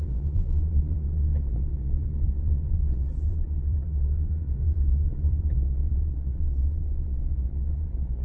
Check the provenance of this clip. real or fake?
fake